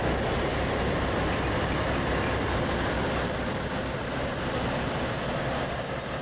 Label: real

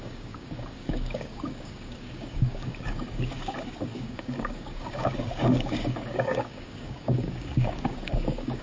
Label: fake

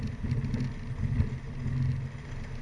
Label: real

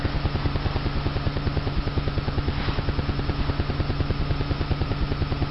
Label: real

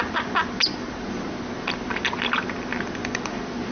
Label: real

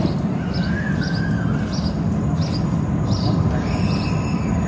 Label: real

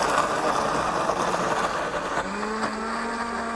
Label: real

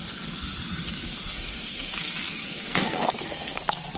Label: fake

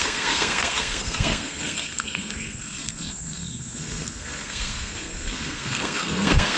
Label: fake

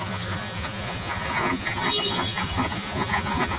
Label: fake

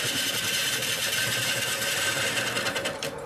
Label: fake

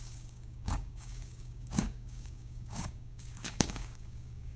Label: fake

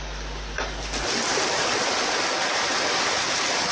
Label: real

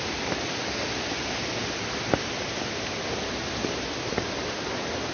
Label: real